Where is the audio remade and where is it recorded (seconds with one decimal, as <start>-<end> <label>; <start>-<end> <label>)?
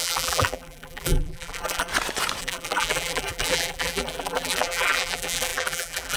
0.0-1.9 remade; 1.9-2.4 recorded; 2.4-6.2 remade